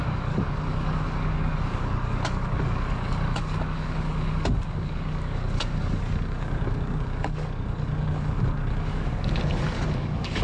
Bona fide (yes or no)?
no